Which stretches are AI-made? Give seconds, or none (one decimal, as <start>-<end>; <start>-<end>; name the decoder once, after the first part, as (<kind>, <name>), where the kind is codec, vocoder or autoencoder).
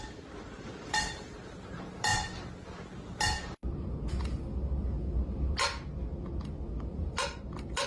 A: 0.0-2.1 (vocoder, BigVGAN v2); 6.8-7.9